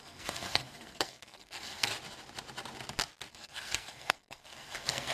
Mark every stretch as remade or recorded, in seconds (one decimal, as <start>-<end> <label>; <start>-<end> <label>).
0.0-1.9 remade; 1.9-3.3 recorded; 3.3-5.1 remade